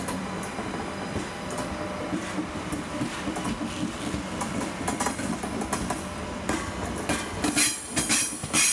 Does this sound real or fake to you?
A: real